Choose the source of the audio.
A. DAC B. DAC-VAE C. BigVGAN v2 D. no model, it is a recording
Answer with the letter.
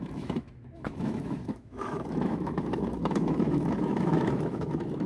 B